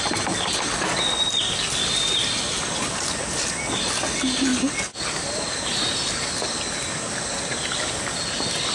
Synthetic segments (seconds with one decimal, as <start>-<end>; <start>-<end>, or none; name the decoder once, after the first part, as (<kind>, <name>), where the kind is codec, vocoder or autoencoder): none